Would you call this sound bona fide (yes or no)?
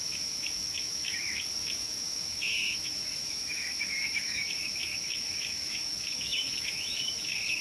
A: no